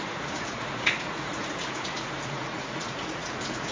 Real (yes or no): no